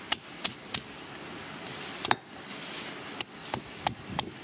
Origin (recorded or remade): recorded